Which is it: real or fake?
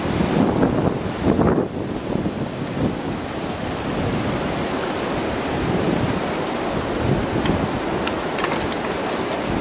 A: real